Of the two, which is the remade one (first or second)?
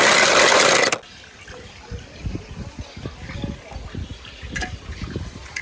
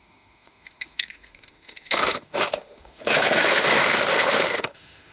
second